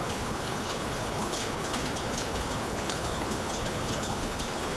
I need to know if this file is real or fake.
fake